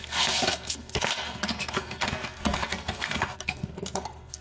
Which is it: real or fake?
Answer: fake